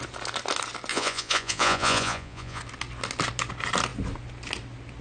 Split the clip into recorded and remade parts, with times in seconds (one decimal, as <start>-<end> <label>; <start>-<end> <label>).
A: 0.0-0.9 recorded; 0.9-2.6 remade; 2.6-5.0 recorded